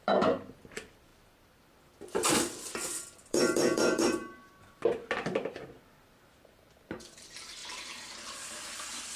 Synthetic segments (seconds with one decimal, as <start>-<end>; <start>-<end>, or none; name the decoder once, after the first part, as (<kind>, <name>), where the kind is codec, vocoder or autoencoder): 0.0-4.2 (vocoder, BigVGAN v2); 6.4-9.2